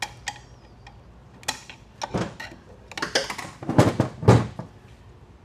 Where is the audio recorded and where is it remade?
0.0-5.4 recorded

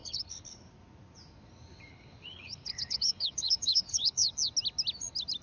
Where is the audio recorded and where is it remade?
0.0-0.7 remade; 0.7-1.9 recorded; 1.9-4.3 remade; 4.3-5.4 recorded

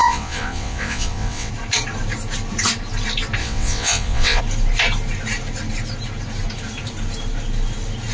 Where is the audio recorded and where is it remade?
0.0-1.5 remade; 1.5-3.4 recorded; 3.4-4.4 remade; 4.4-8.1 recorded

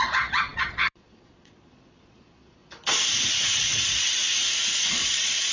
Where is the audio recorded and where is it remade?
0.0-2.6 remade; 2.6-3.3 recorded; 3.3-4.2 remade; 4.2-4.9 recorded; 4.9-5.5 remade

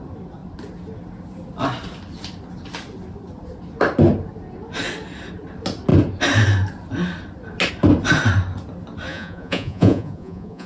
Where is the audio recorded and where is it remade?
0.0-9.1 recorded; 9.1-10.7 remade

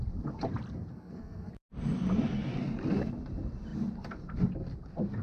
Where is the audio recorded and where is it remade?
0.0-0.9 recorded; 0.9-1.5 remade; 1.5-5.2 recorded